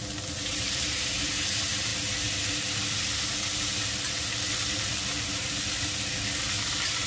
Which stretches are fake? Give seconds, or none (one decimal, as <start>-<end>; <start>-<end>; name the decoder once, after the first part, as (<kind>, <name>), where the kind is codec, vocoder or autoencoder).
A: 0.5-1.3 (vocoder, BigVGAN v2)